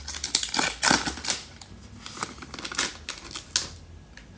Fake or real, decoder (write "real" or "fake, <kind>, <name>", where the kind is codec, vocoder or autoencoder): real